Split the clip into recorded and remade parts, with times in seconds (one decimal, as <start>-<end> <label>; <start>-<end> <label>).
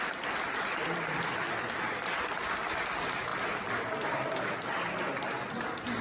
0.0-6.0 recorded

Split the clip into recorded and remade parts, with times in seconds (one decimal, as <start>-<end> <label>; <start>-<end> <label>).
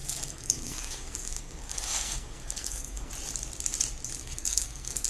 0.0-3.1 remade; 3.1-4.2 recorded; 4.2-5.1 remade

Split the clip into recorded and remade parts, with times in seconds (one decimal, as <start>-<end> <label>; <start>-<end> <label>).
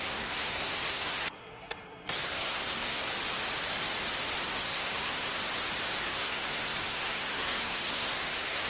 0.0-3.1 remade; 3.1-4.5 recorded; 4.5-5.4 remade; 5.4-6.0 recorded; 6.0-8.7 remade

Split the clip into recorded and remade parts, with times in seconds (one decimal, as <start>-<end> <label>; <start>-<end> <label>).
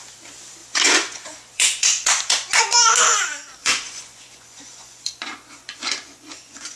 0.0-0.6 recorded; 0.6-2.6 remade; 2.6-3.6 recorded; 3.6-6.8 remade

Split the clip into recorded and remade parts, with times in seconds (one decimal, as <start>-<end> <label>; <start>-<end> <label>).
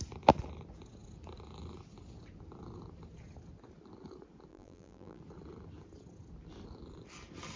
0.0-4.5 recorded; 4.5-5.2 remade; 5.2-7.6 recorded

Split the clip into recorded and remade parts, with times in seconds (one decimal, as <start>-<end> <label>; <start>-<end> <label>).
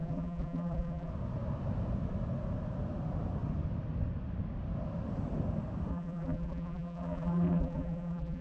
0.0-1.1 remade; 1.1-5.9 recorded; 5.9-8.4 remade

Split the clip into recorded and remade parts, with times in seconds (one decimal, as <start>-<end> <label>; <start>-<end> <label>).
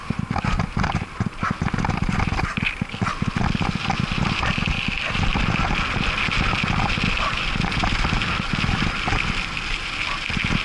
0.0-10.6 recorded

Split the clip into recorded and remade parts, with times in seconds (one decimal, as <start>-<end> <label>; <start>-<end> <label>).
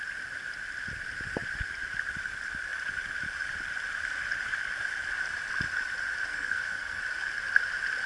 0.0-6.3 recorded; 6.3-7.0 remade; 7.0-8.1 recorded